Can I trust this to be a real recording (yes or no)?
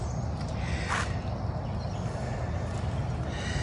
yes